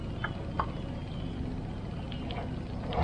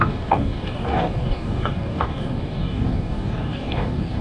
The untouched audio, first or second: first